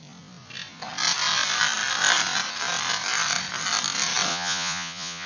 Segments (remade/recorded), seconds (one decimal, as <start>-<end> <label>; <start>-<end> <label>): 0.0-4.3 recorded; 4.3-5.3 remade